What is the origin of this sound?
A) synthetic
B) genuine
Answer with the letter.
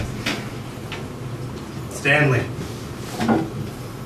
B